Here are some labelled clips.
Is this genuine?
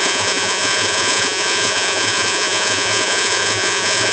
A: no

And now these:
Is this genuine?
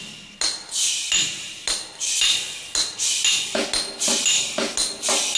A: yes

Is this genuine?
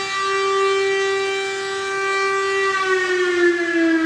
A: yes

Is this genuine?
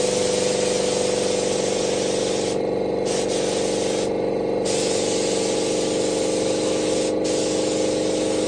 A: yes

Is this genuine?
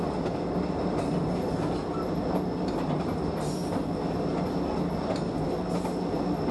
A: yes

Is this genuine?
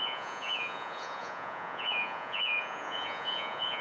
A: no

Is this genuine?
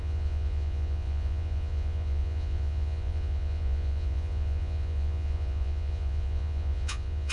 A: no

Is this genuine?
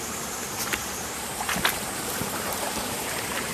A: no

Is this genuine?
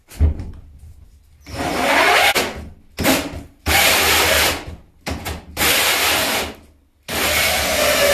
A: yes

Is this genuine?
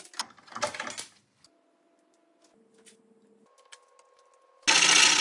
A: yes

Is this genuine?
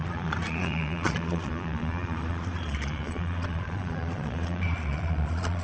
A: no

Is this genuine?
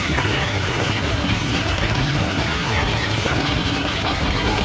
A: no